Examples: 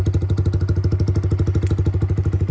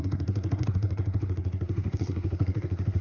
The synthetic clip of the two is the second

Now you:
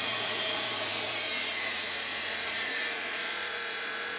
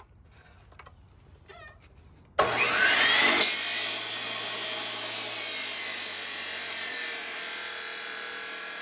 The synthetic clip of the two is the first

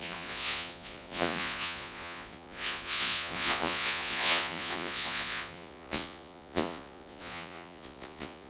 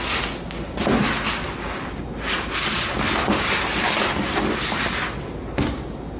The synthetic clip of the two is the first